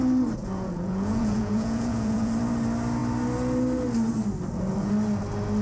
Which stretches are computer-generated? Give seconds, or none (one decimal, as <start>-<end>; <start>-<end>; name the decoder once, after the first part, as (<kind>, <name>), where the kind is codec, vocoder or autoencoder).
0.4-2.3 (vocoder, Vocos)